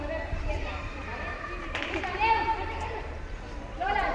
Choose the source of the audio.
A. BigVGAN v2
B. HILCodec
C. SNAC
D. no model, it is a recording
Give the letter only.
A